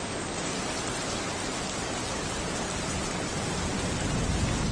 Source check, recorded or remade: recorded